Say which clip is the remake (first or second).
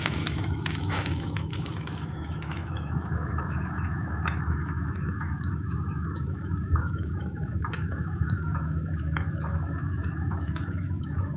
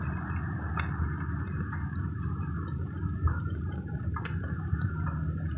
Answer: first